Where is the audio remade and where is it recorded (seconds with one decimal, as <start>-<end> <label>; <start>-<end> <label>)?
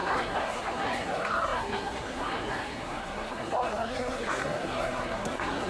0.0-5.7 remade